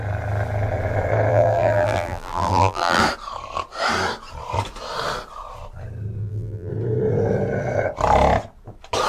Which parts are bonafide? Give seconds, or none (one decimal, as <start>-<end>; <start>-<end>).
0.0-1.3; 3.0-6.2; 6.7-9.1